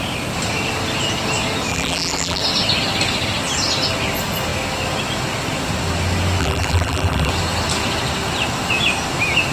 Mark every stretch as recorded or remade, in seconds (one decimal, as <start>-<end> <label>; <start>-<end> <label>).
0.0-1.7 recorded; 1.7-2.4 remade; 2.4-6.4 recorded; 6.4-7.3 remade; 7.3-9.5 recorded